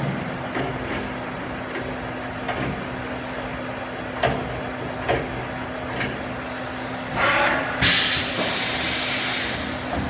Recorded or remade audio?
recorded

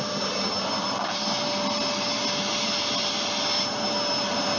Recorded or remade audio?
recorded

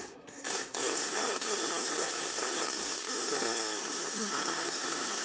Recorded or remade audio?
remade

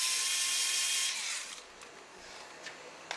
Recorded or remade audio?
recorded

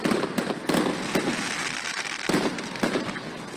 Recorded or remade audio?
recorded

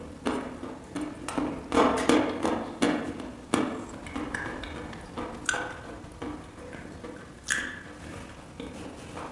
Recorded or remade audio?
recorded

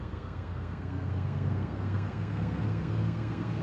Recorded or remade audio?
remade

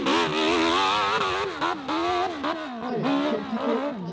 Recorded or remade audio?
recorded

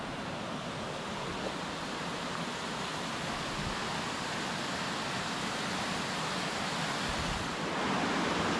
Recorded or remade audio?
recorded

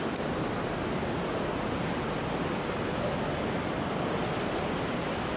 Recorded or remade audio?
recorded